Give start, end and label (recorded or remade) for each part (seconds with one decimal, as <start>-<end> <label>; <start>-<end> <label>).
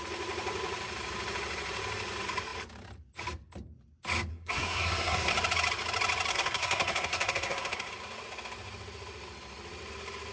0.0-4.3 recorded; 4.3-5.3 remade; 5.3-6.3 recorded; 6.3-7.9 remade; 7.9-10.3 recorded